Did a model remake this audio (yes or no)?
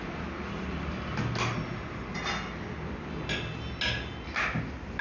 no